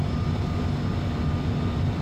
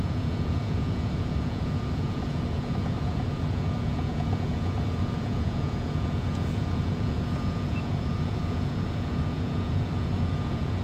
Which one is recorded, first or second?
first